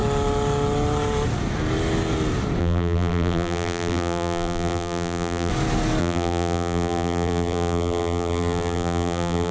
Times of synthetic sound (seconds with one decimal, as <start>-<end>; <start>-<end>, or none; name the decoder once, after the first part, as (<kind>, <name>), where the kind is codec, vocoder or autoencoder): 2.6-5.5 (vocoder, BigVGAN v2); 6.0-9.5